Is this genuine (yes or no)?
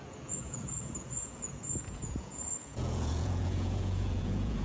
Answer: no